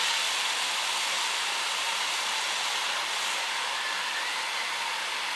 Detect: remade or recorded recorded